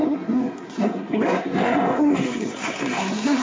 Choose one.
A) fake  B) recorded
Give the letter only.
A